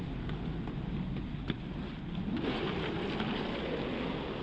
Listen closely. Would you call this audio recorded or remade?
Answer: recorded